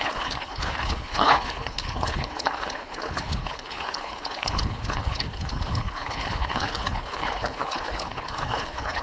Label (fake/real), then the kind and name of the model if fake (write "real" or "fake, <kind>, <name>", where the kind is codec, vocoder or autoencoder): fake, codec, HILCodec